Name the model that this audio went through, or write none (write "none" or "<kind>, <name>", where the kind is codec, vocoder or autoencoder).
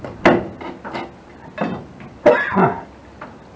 none